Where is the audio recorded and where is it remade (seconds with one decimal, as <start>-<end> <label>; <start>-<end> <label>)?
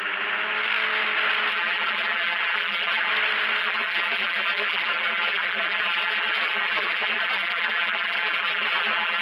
0.0-1.5 recorded; 1.5-3.1 remade; 3.1-3.6 recorded; 3.6-9.2 remade